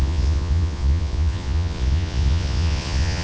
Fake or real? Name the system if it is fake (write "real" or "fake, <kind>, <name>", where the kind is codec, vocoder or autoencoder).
fake, vocoder, Vocos